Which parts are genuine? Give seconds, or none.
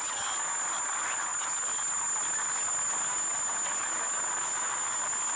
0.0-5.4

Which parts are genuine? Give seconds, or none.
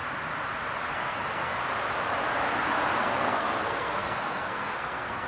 0.0-0.9; 1.6-3.0